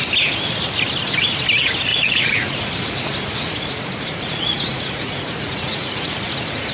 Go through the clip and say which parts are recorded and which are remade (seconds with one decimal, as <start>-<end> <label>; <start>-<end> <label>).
0.0-1.9 recorded; 1.9-2.7 remade; 2.7-3.3 recorded; 3.3-6.7 remade